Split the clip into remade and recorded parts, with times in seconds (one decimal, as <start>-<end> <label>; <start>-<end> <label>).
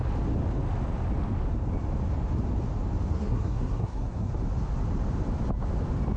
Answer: 0.0-3.1 recorded; 3.1-4.3 remade; 4.3-6.2 recorded